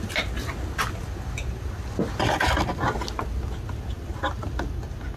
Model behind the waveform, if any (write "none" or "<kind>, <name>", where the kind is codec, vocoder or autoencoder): none